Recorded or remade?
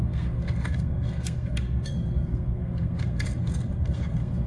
remade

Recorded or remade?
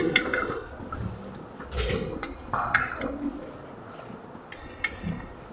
recorded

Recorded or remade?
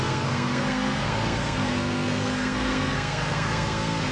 remade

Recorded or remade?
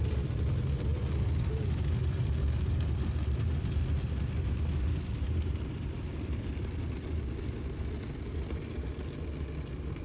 recorded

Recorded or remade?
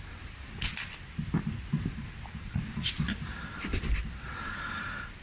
recorded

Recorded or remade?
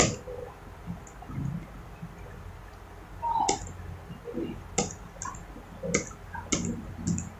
recorded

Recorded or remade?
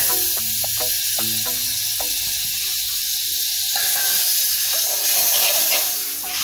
recorded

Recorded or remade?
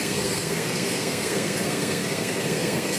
remade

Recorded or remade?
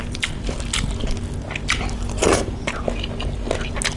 recorded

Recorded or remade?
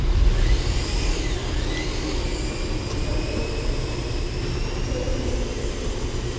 recorded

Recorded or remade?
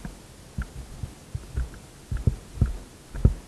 recorded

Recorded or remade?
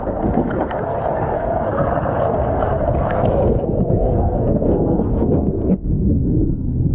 remade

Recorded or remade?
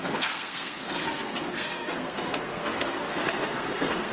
remade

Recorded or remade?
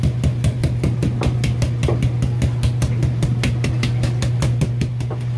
recorded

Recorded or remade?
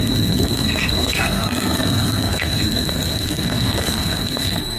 remade